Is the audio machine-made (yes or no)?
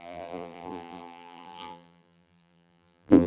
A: yes